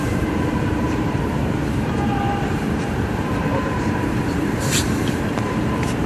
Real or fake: fake